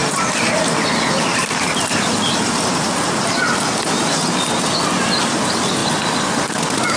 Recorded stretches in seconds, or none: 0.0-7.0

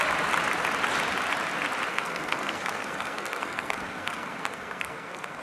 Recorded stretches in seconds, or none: 0.0-1.9

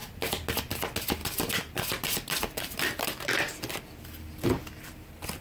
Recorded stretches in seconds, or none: 0.0-1.2; 4.4-5.4

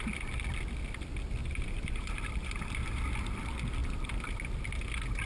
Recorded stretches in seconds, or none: 0.0-1.4; 2.1-5.3

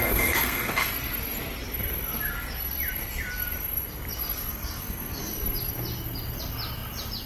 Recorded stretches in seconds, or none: 0.9-4.5; 5.3-7.3

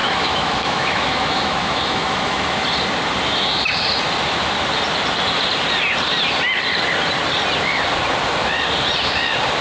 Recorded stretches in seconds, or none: 2.6-9.6